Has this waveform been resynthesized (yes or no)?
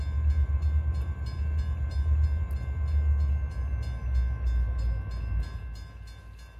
no